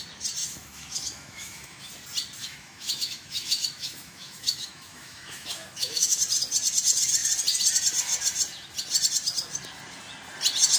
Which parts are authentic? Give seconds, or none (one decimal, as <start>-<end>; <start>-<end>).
0.0-0.4; 1.9-2.4; 6.2-10.8